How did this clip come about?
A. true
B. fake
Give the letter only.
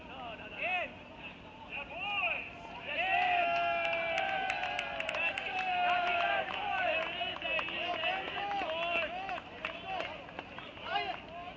A